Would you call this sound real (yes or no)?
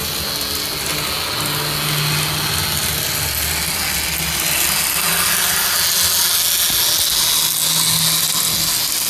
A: yes